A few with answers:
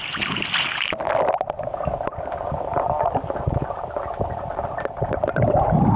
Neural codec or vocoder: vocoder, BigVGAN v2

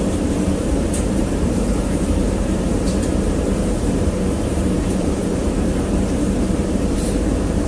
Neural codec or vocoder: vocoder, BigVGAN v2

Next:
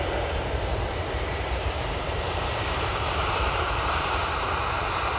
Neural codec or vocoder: vocoder, BigVGAN v2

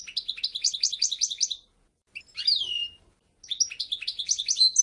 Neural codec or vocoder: none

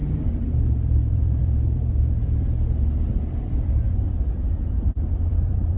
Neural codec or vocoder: vocoder, BigVGAN v2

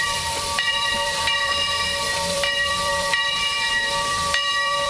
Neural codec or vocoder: vocoder, BigVGAN v2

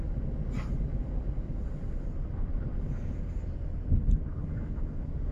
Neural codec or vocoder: none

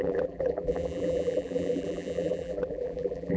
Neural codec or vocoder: vocoder, BigVGAN v2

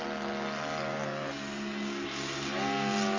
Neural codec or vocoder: none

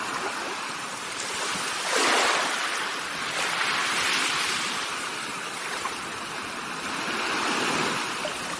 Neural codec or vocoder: none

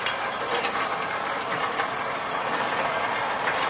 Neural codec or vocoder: vocoder, BigVGAN v2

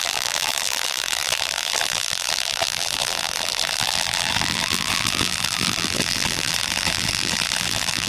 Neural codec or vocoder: vocoder, BigVGAN v2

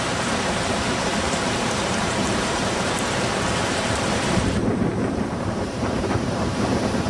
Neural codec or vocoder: vocoder, BigVGAN v2